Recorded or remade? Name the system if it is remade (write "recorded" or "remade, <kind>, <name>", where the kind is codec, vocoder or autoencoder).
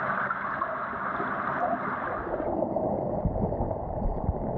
recorded